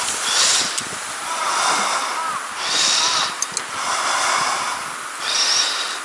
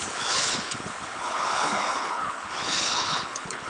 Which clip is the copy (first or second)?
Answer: second